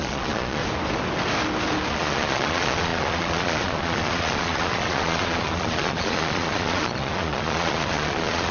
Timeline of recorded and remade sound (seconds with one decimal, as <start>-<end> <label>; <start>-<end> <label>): 0.0-0.6 remade; 0.6-1.9 recorded; 1.9-8.5 remade